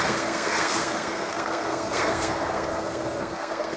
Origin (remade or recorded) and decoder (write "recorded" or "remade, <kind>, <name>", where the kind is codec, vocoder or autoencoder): remade, codec, SNAC